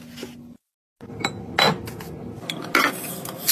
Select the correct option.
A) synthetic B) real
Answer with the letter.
B